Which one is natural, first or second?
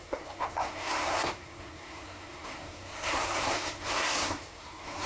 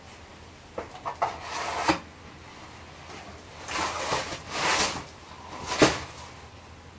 second